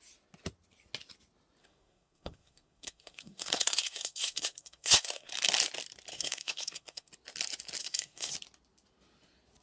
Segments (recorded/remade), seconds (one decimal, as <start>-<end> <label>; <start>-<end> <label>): 0.0-1.6 recorded; 1.6-5.3 remade; 5.3-6.1 recorded; 6.1-7.1 remade; 7.1-7.8 recorded; 7.8-8.3 remade; 8.3-9.6 recorded